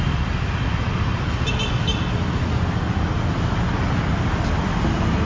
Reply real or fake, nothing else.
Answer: real